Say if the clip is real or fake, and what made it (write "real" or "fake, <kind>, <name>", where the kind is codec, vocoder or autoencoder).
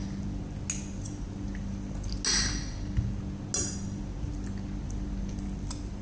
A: real